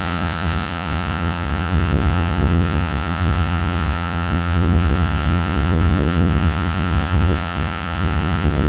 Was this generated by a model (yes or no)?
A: yes